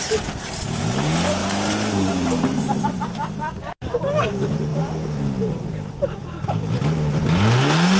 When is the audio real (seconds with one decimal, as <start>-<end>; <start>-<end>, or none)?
0.0-8.0